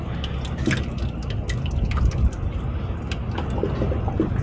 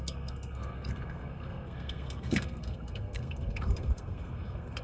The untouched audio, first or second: first